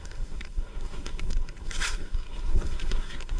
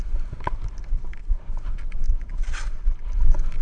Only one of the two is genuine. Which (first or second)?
second